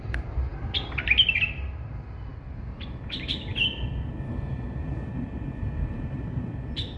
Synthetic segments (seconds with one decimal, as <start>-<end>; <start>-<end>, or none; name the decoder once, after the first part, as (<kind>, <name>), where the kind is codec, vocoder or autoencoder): 0.0-0.5 (vocoder, BigVGAN v2); 1.4-2.3; 3.1-7.0